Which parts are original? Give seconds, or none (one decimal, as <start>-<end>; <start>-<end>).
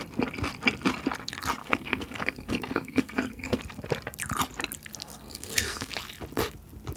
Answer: 0.0-1.6; 3.6-5.0; 5.9-7.0